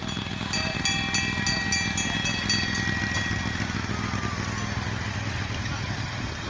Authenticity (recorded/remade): recorded